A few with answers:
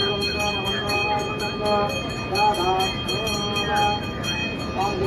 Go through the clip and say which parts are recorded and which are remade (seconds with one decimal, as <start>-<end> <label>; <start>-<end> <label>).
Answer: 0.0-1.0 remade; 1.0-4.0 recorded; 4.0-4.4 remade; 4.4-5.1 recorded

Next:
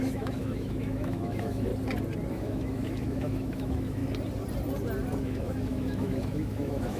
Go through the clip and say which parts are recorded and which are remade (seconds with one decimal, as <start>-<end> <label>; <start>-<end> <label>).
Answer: 0.0-1.7 remade; 1.7-2.3 recorded; 2.3-4.0 remade; 4.0-5.2 recorded; 5.2-7.0 remade

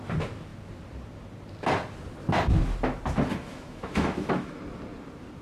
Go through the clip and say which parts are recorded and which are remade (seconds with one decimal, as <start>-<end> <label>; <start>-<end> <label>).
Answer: 0.0-3.3 recorded; 3.3-4.6 remade; 4.6-5.4 recorded

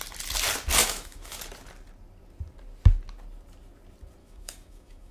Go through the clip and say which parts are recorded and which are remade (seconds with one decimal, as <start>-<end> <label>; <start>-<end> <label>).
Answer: 0.0-0.8 recorded; 0.8-1.4 remade; 1.4-4.2 recorded; 4.2-5.1 remade

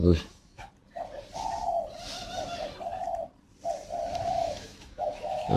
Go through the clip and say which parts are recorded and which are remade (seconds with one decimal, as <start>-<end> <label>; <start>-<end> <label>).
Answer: 0.0-0.7 remade; 0.7-4.4 recorded; 4.4-5.6 remade

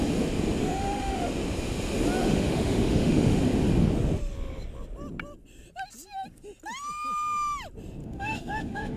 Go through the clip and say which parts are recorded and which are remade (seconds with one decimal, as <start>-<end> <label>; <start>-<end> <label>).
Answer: 0.0-0.6 recorded; 0.6-1.3 remade; 1.3-2.2 recorded; 2.2-3.4 remade; 3.4-8.0 recorded; 8.0-9.0 remade